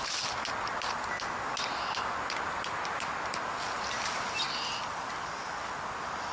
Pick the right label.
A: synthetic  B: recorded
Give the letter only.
B